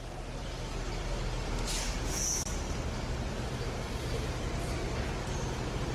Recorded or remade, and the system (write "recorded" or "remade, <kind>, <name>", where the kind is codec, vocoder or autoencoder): recorded